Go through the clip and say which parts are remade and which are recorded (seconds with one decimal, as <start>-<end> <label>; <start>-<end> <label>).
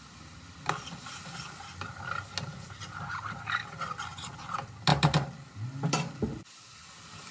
0.0-7.3 recorded